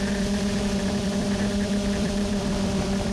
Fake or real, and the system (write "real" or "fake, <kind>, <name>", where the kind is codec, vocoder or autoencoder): fake, vocoder, BigVGAN v2